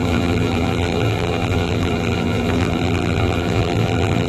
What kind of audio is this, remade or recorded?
remade